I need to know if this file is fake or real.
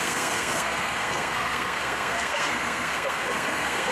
fake